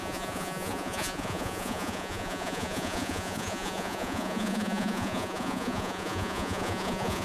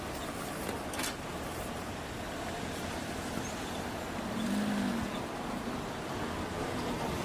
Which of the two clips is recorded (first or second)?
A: second